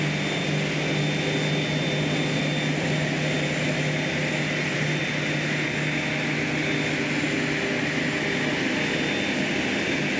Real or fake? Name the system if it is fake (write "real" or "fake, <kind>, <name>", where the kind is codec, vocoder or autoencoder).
real